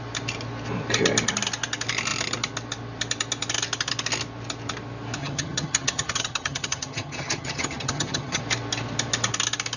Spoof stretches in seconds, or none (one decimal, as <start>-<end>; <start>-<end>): 5.2-8.4